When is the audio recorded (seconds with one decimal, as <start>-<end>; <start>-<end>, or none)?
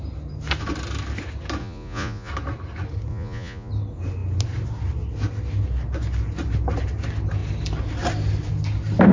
0.0-1.6; 2.3-3.1; 3.7-9.1